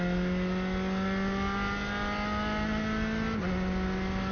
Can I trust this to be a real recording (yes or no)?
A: yes